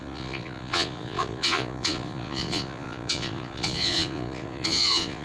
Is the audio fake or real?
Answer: fake